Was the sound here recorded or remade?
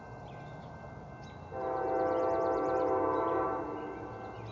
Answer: recorded